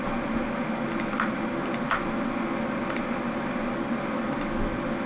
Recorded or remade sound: recorded